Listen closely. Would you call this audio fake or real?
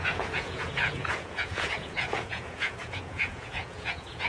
fake